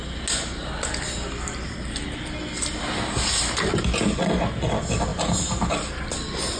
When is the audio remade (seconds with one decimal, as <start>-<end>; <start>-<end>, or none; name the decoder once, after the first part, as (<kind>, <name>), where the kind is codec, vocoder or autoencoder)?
none